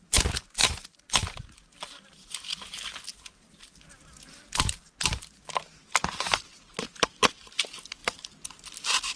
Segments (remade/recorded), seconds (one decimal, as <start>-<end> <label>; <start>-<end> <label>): 0.0-9.2 recorded